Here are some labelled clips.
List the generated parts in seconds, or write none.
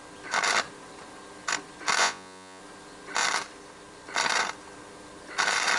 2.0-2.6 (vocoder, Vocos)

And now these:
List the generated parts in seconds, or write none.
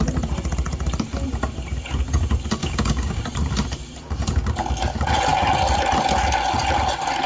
2.6-3.2 (codec, DAC)